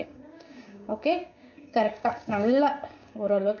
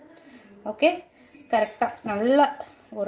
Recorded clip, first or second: second